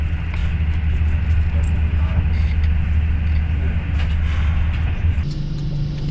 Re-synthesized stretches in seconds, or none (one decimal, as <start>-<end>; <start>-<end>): none